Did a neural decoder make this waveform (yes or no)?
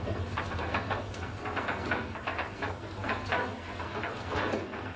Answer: yes